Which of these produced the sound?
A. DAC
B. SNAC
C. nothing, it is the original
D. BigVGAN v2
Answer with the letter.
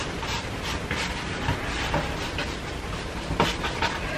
C